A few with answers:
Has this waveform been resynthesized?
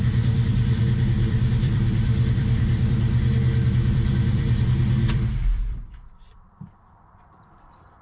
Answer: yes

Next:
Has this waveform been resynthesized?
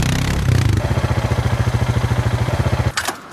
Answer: no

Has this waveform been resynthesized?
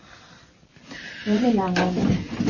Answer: yes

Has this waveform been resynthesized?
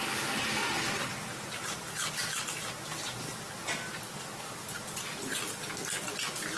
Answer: no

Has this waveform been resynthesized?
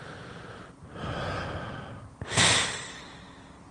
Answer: no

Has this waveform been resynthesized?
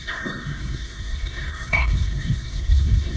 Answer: yes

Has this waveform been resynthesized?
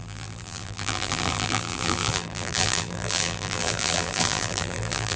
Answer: yes